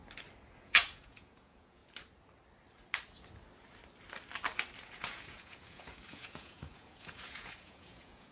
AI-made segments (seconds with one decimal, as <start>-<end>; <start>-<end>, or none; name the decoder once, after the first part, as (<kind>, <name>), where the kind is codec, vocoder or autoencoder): 0.6-1.8 (vocoder, Vocos); 4.8-8.3